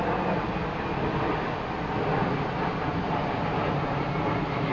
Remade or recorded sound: recorded